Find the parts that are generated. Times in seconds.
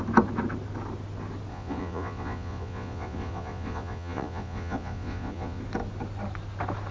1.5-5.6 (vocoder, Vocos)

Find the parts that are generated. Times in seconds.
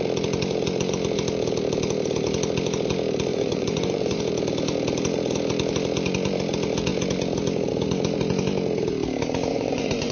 3.3-4.2 (vocoder, Vocos); 9.5-10.1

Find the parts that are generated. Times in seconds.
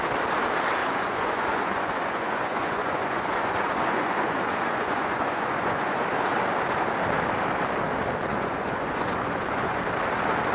0.8-6.0 (vocoder, Vocos); 8.3-9.8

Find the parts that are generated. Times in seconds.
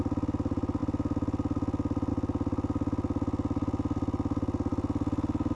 none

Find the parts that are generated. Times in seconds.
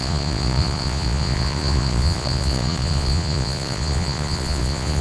0.0-5.0 (vocoder, Vocos)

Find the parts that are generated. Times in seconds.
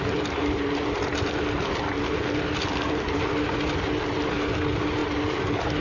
none